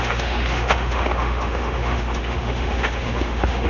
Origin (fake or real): fake